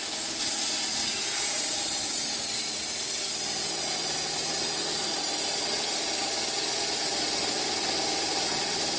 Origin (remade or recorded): recorded